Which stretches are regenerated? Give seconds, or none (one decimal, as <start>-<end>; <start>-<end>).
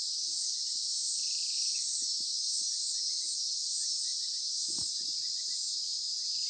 0.9-1.7; 4.1-6.0